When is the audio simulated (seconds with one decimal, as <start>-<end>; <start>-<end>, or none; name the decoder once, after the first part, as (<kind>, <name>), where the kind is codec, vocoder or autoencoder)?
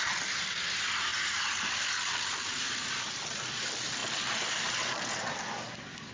none